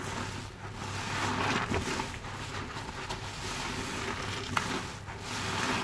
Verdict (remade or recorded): recorded